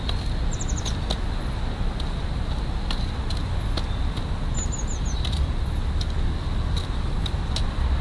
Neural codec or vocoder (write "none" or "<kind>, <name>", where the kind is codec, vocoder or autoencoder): none